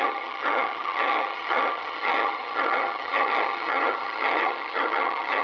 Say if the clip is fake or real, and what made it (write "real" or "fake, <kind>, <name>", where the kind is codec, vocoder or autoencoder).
fake, vocoder, HiFi-GAN